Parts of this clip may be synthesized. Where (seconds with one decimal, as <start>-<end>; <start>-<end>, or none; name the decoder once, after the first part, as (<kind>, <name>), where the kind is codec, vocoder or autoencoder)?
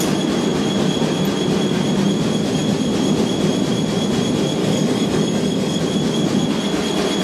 4.6-5.8 (codec, DAC)